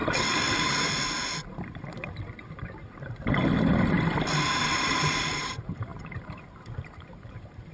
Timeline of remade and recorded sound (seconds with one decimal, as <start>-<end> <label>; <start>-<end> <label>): 0.0-4.6 recorded; 4.6-7.7 remade